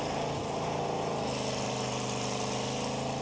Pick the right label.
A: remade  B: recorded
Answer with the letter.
B